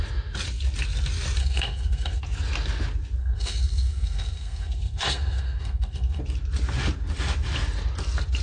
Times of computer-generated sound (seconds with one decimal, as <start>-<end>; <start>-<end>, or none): 1.4-2.2; 3.2-6.2